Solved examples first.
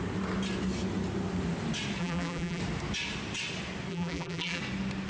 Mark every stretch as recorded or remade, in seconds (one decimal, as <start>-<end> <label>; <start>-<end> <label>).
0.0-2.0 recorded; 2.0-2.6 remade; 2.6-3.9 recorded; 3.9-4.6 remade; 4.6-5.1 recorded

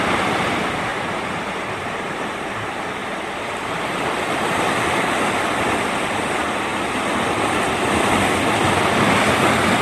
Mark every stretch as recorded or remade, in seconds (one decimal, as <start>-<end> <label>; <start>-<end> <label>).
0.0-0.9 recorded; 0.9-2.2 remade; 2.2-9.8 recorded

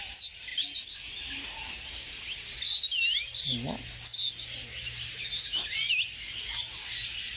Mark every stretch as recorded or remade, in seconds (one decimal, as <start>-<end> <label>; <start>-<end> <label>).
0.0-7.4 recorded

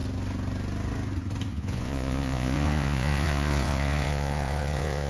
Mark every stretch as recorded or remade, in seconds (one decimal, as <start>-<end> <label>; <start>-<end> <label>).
0.0-1.5 recorded; 1.5-5.1 remade